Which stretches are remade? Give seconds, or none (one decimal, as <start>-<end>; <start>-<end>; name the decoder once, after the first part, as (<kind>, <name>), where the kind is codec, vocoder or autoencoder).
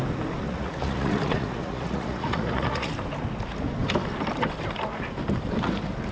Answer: 0.4-2.9 (vocoder, Vocos)